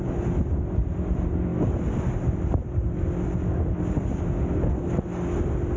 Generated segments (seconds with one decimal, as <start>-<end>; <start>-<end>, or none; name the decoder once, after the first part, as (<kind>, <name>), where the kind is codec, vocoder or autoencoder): none

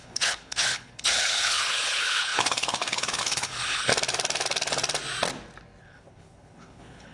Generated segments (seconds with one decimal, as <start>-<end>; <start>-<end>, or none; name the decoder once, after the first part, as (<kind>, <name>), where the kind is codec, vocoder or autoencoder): 0.0-3.9 (codec, HILCodec); 5.8-7.1

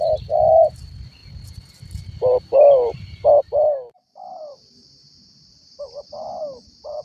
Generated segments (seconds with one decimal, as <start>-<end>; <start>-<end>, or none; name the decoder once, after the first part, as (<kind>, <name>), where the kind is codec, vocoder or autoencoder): none

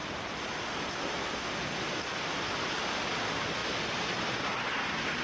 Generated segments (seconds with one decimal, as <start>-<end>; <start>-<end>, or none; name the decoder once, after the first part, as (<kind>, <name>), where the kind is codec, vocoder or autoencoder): none